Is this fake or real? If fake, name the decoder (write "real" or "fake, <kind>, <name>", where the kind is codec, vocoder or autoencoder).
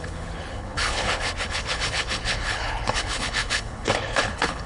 fake, codec, HILCodec